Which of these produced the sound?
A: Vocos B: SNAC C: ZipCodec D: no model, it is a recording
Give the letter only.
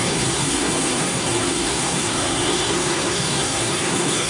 B